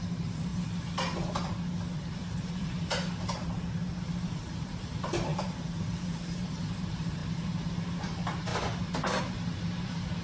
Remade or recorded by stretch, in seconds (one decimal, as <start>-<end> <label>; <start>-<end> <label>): 0.0-0.5 remade; 0.5-2.4 recorded; 2.4-8.5 remade; 8.5-9.2 recorded; 9.2-10.2 remade